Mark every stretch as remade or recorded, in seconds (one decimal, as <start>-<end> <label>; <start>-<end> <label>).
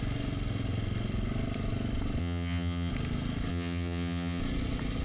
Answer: 0.0-2.2 recorded; 2.2-2.9 remade; 2.9-3.5 recorded; 3.5-4.4 remade; 4.4-5.0 recorded